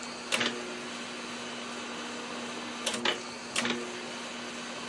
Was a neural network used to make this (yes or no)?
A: no